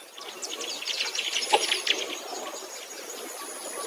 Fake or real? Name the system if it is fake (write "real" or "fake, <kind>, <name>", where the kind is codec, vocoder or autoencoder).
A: real